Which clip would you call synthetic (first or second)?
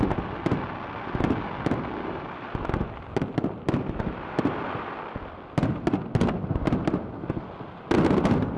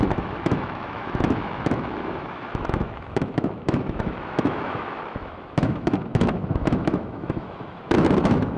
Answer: second